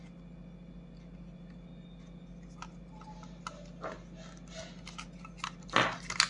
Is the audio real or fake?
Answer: real